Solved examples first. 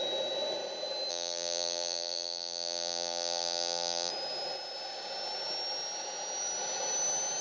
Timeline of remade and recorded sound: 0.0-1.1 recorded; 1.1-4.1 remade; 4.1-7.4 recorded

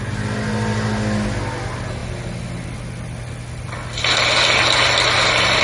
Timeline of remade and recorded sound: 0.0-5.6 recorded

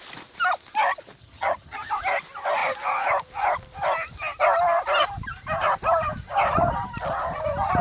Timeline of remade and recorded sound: 0.0-1.2 recorded; 1.2-1.9 remade; 1.9-7.8 recorded